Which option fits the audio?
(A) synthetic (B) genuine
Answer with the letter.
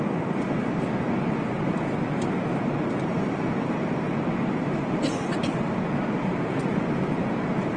B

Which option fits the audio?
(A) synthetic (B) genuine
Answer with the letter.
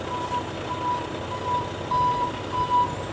B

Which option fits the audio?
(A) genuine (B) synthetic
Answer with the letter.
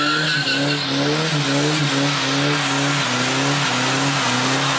A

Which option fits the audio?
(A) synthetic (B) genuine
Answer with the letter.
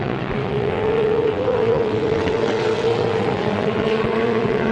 A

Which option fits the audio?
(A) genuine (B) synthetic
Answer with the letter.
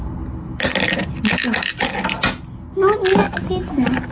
A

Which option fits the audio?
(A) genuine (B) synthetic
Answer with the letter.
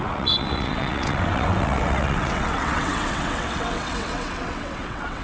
B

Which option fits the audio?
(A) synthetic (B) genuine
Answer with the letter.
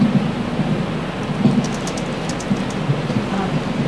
B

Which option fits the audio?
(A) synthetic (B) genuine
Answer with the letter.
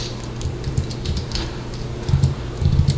B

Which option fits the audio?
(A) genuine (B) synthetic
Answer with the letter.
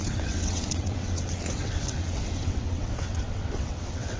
B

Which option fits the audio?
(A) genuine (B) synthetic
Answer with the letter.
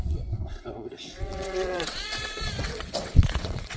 B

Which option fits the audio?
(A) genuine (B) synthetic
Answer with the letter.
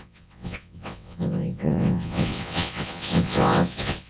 B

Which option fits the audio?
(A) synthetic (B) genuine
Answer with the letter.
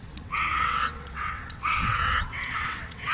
A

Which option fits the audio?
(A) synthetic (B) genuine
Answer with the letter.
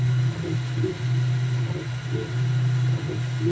B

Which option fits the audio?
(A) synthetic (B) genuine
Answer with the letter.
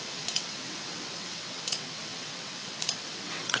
A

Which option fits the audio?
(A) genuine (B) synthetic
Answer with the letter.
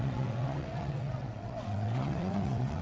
B